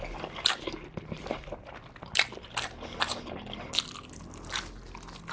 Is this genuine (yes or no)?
yes